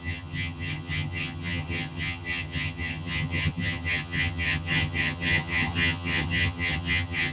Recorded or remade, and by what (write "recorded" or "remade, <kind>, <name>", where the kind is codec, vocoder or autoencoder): remade, vocoder, HiFi-GAN